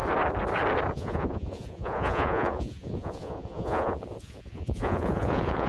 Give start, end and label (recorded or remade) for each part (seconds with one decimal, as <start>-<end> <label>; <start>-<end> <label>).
0.0-0.9 recorded; 0.9-5.7 remade